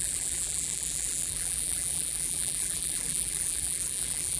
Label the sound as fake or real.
fake